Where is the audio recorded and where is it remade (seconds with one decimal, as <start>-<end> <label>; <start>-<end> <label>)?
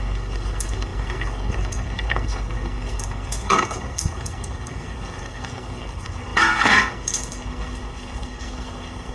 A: 0.0-9.1 remade